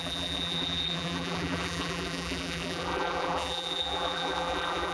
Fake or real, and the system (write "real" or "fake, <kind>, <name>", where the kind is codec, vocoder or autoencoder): fake, vocoder, BigVGAN v2